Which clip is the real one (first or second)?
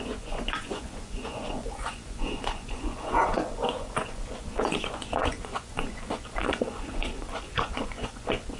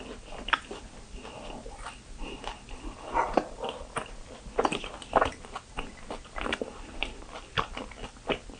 second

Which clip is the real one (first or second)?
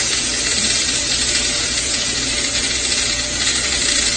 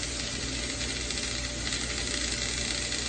second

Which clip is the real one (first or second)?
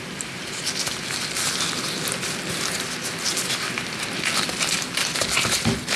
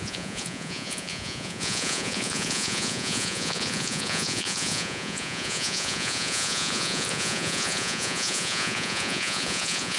first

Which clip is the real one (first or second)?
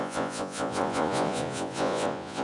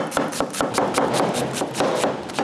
second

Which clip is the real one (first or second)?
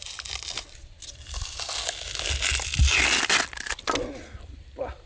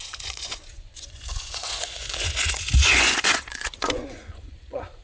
first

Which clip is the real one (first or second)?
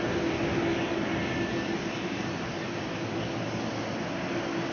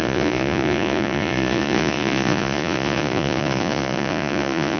first